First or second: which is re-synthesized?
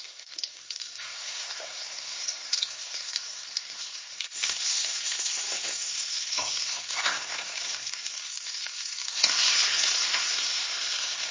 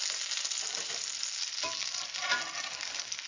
first